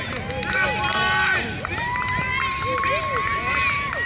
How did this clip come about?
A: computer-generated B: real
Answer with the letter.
B